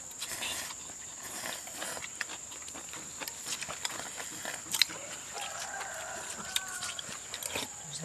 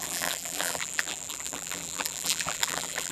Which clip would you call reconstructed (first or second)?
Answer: second